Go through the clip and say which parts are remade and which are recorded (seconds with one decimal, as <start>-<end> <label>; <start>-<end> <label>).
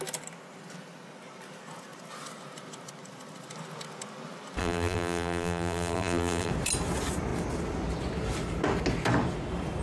0.0-4.6 recorded; 4.6-6.5 remade; 6.5-9.8 recorded